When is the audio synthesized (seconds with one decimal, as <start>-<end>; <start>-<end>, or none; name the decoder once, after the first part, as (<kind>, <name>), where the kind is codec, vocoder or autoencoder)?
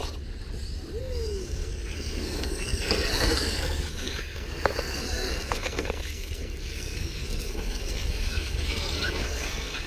1.0-9.9 (codec, SNAC)